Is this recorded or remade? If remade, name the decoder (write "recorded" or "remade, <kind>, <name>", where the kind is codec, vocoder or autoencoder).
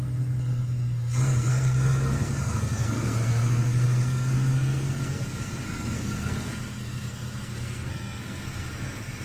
remade, codec, SNAC